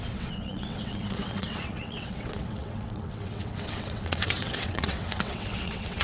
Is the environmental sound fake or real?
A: fake